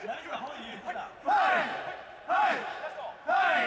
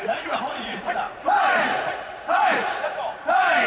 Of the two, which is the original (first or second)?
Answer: first